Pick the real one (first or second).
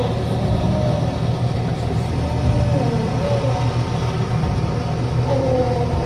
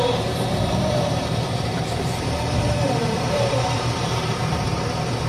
first